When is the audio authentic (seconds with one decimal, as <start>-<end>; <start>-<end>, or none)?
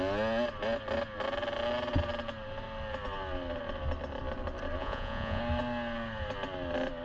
0.0-4.8; 5.4-7.0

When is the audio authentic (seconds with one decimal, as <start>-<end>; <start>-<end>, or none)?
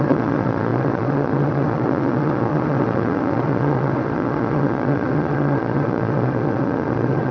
none